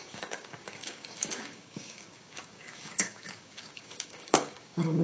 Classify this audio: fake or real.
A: fake